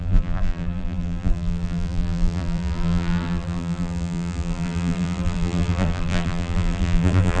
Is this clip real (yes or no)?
no